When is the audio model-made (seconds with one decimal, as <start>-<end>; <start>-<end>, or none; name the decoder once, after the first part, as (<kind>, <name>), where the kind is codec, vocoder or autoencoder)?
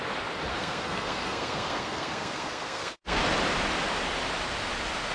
0.5-3.2 (codec, SNAC)